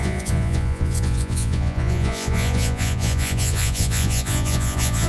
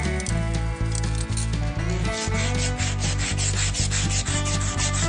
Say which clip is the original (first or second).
second